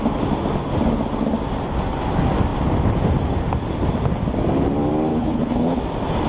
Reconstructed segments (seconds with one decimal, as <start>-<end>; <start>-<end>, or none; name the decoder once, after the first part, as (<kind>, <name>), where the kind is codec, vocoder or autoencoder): 5.1-5.8 (codec, HILCodec)